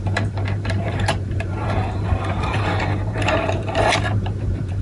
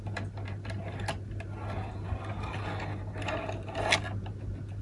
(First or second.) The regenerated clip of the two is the first